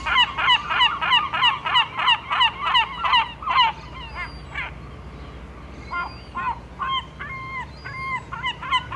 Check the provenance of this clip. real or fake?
real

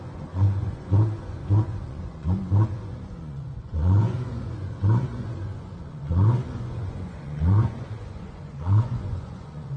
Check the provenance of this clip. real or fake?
fake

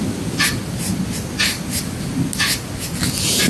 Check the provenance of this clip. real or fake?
real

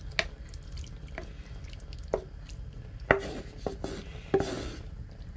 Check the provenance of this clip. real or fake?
real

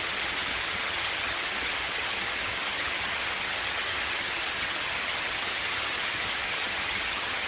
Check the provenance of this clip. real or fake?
fake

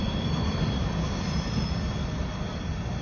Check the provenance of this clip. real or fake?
real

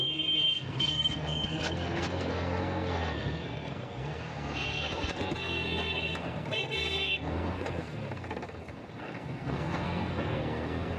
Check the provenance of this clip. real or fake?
fake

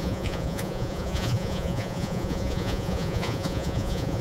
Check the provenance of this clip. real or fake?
fake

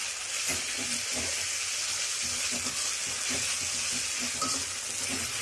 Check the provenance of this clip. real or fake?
real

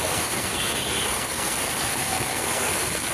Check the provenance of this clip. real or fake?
fake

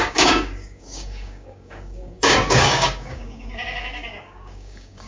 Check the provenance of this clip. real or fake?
fake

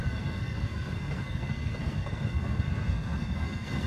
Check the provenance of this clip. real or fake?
fake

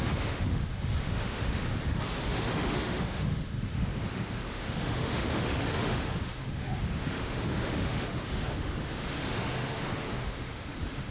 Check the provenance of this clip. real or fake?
fake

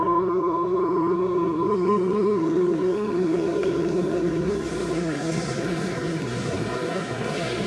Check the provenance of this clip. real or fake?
fake